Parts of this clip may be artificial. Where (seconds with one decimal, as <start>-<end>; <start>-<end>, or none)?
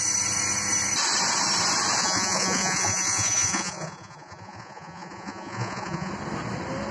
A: 2.0-6.1